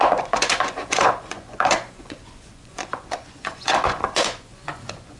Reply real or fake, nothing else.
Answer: fake